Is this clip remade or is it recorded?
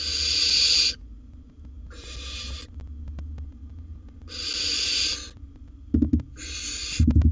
recorded